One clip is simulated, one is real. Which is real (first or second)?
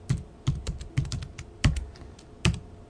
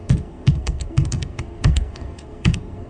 first